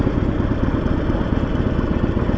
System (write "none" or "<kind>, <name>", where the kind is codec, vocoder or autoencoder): none